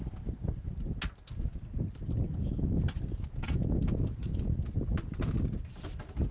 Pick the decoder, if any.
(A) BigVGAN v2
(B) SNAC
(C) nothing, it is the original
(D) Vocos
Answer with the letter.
C